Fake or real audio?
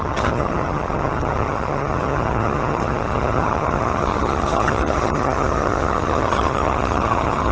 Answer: fake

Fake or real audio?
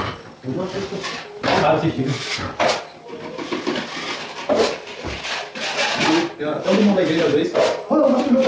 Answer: real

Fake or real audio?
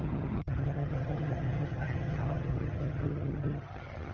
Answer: fake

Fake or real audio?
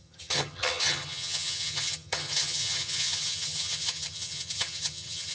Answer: fake